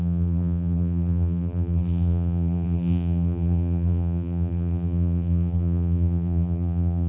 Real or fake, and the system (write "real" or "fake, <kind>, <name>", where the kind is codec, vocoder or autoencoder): fake, vocoder, BigVGAN v2